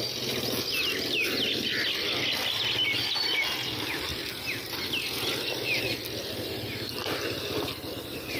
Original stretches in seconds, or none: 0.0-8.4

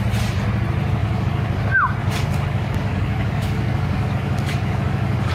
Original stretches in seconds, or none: 0.0-1.0; 1.6-2.0

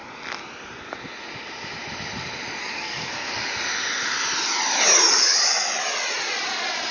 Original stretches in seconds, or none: 0.0-2.6; 3.3-6.9

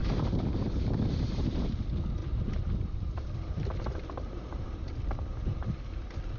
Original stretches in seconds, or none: 1.8-2.2; 6.0-6.4